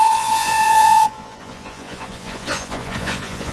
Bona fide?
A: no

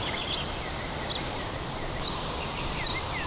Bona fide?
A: yes